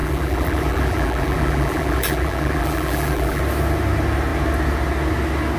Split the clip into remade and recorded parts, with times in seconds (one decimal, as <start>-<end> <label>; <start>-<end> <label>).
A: 0.0-3.4 remade; 3.4-5.6 recorded